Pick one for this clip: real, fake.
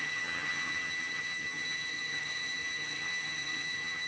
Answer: fake